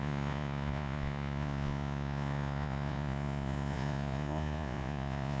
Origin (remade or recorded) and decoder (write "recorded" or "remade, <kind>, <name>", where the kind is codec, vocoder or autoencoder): remade, vocoder, Vocos